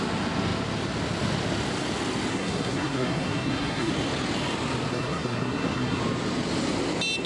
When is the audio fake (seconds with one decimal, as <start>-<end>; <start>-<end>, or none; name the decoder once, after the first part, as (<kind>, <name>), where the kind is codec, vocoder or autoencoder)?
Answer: 2.3-3.9 (codec, SNAC); 4.9-6.0